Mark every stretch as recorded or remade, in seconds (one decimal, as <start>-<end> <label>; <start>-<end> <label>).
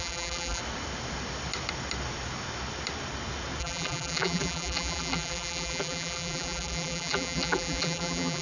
0.0-0.6 remade; 0.6-3.6 recorded; 3.6-8.4 remade